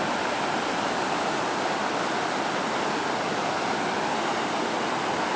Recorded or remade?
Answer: recorded